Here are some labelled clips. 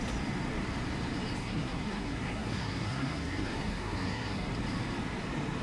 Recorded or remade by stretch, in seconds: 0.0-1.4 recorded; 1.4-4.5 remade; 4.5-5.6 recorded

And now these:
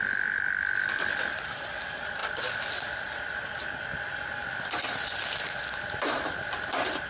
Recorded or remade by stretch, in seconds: 0.0-7.1 recorded

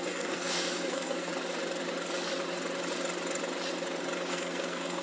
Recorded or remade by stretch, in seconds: 0.0-1.3 remade; 1.3-4.3 recorded; 4.3-5.0 remade

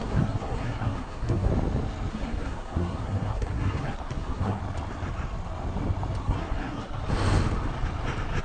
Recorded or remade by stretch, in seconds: 0.0-1.5 remade; 1.5-2.1 recorded; 2.1-4.6 remade; 4.6-6.2 recorded; 6.2-7.0 remade; 7.0-8.4 recorded

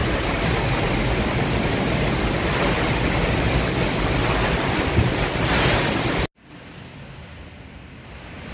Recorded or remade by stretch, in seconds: 0.0-8.5 recorded

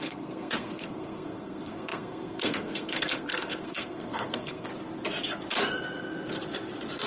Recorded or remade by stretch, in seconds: 0.0-4.7 remade; 4.7-7.1 recorded

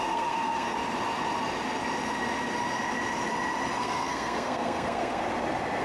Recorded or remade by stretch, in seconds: 0.0-0.7 remade; 0.7-3.8 recorded; 3.8-5.2 remade; 5.2-5.8 recorded